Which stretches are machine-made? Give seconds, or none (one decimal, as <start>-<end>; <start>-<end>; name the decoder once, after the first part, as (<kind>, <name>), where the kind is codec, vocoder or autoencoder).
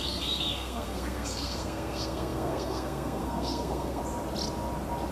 0.0-4.0 (codec, SNAC)